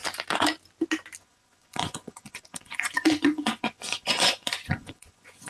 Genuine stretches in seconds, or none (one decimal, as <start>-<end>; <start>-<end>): 0.0-1.2